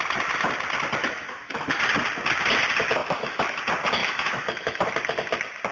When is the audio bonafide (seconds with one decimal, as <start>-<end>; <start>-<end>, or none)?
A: 0.0-1.0; 1.8-3.0; 3.6-4.0; 4.9-5.7